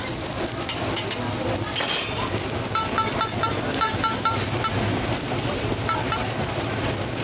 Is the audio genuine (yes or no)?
yes